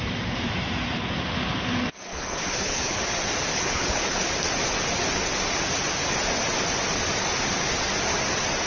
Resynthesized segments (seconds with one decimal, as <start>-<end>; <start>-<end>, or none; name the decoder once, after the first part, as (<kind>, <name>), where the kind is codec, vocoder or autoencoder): 2.1-3.0 (codec, HILCodec); 3.5-4.3